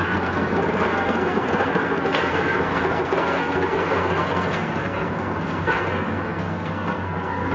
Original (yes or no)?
no